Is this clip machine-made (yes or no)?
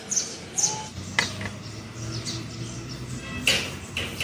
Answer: no